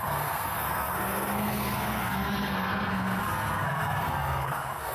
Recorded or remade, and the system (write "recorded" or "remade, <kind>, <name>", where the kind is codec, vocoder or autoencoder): remade, codec, SNAC